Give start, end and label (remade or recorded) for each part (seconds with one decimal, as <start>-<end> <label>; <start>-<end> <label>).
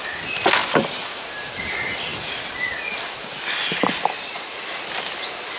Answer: 0.0-5.6 recorded